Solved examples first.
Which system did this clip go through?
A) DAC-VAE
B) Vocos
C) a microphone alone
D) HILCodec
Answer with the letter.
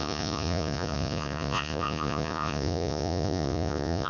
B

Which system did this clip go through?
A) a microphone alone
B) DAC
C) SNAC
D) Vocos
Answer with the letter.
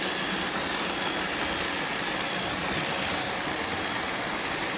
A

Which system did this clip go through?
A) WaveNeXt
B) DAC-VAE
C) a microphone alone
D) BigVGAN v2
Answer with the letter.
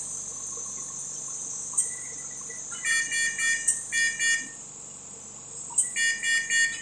C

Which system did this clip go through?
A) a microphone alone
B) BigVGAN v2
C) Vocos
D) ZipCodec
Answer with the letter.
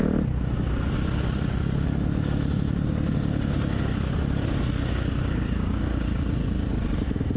A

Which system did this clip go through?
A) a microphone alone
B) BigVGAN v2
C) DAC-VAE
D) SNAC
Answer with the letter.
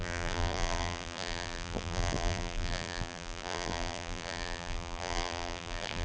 B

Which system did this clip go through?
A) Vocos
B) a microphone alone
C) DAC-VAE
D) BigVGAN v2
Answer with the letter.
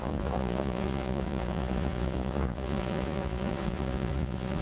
A